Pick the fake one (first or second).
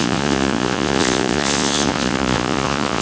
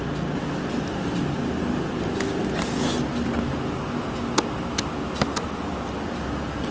first